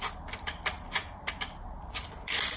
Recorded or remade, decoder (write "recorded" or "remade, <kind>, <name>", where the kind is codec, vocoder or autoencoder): recorded